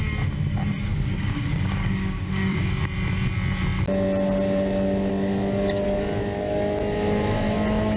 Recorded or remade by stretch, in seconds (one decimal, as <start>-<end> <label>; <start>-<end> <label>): 0.0-0.8 recorded; 0.8-2.7 remade; 2.7-8.0 recorded